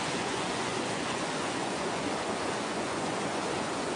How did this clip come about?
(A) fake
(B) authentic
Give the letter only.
A